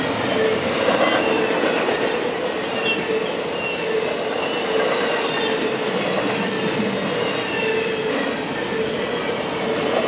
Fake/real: real